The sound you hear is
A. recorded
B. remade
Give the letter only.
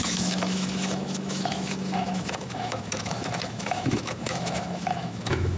B